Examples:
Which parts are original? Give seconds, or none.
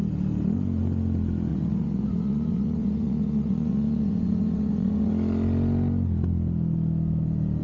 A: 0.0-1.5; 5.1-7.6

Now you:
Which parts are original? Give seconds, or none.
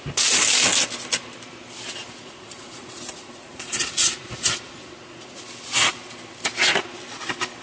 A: 0.0-2.0; 5.4-7.6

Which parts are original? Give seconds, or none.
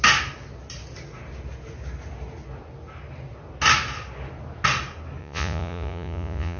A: 0.0-5.2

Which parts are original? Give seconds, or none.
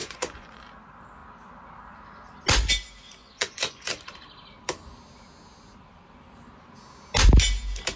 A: 0.6-3.2; 3.9-8.0